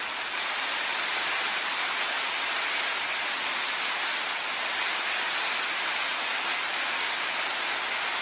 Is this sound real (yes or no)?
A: yes